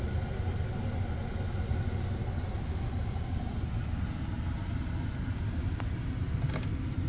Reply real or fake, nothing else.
real